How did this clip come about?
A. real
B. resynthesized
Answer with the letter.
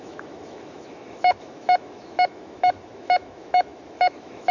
B